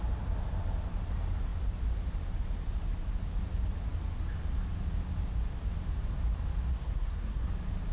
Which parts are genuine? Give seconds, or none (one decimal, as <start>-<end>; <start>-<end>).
0.0-6.7; 7.5-7.9